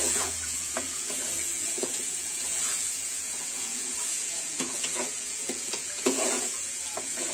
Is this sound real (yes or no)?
no